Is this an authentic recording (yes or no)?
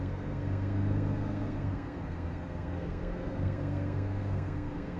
no